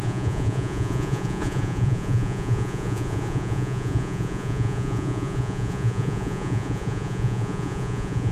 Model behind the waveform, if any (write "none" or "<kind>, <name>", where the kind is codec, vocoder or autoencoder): vocoder, Vocos